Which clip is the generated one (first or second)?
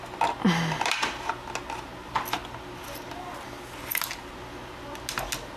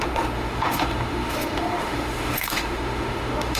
second